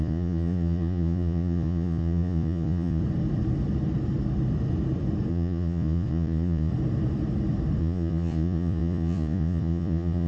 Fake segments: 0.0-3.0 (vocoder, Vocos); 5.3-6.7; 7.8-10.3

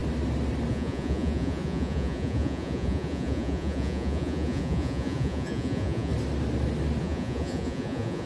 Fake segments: 0.7-6.1 (vocoder, Vocos); 7.0-8.3

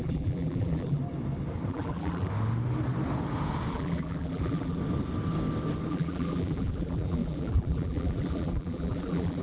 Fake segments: 0.0-1.0 (vocoder, BigVGAN v2); 1.7-2.3; 3.7-4.8; 5.9-9.4